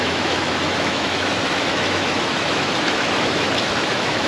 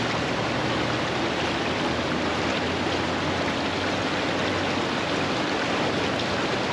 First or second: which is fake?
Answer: first